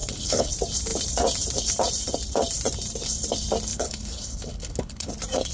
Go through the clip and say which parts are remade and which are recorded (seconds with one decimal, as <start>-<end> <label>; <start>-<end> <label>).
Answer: 0.0-0.5 remade; 0.5-3.7 recorded; 3.7-5.1 remade; 5.1-5.5 recorded